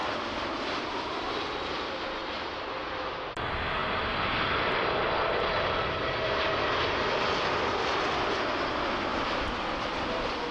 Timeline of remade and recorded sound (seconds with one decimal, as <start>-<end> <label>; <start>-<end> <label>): 0.0-1.2 remade; 1.2-10.5 recorded